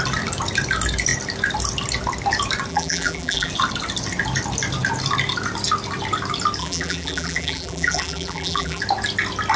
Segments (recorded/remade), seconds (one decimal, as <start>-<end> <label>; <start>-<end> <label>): 0.0-2.7 recorded; 2.7-3.5 remade; 3.5-6.6 recorded; 6.6-8.8 remade; 8.8-9.6 recorded